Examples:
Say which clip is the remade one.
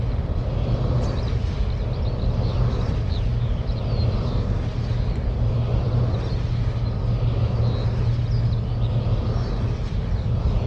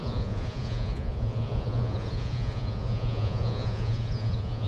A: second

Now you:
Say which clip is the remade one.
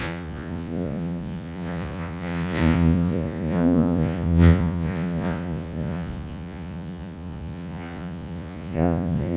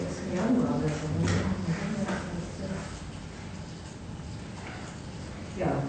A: first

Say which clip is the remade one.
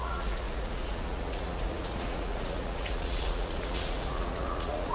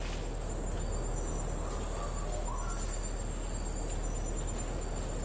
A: first